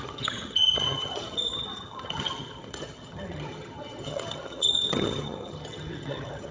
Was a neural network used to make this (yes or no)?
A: yes